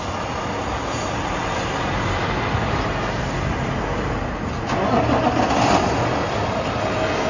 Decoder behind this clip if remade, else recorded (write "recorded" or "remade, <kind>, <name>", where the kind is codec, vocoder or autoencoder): recorded